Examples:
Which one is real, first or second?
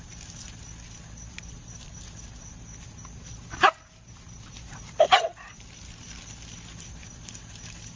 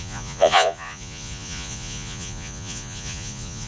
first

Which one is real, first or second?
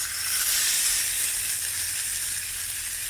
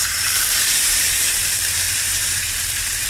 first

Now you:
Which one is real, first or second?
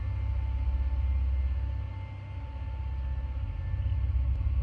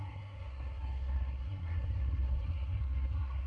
first